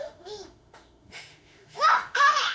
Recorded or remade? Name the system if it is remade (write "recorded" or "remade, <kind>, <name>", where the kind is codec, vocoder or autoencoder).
remade, autoencoder, DAC-VAE